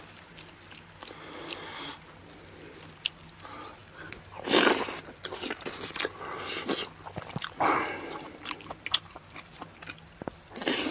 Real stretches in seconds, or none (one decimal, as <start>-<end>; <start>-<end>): 0.0-10.9